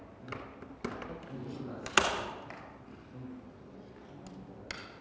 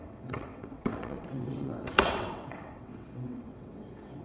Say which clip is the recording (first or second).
first